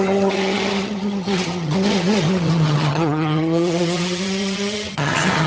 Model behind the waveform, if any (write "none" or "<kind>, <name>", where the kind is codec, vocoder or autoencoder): vocoder, HiFi-GAN